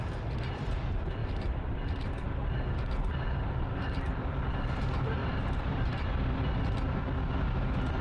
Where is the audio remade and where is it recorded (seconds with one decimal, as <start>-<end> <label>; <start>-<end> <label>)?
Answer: 0.0-5.2 recorded; 5.2-6.3 remade; 6.3-8.0 recorded